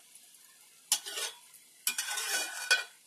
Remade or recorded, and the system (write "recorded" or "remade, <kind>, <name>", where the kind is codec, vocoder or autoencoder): recorded